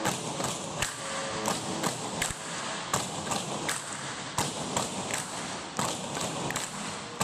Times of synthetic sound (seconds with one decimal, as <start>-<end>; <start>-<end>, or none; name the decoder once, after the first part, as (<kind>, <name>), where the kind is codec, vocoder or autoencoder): none